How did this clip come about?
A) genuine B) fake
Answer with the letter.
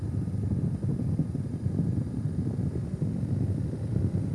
A